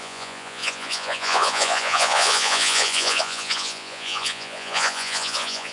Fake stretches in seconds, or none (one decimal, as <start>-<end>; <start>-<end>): 0.0-5.7